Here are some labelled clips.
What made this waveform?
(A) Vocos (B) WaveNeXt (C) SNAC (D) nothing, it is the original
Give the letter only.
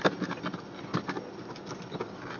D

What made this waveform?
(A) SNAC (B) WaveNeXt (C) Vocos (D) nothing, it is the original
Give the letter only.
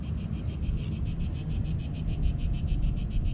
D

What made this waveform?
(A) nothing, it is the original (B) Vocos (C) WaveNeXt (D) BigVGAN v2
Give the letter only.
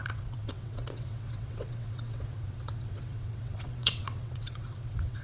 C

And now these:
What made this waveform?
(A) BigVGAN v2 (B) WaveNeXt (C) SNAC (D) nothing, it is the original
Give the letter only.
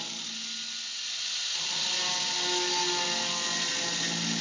D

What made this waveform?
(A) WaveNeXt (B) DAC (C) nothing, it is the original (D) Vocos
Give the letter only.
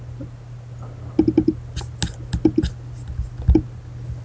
C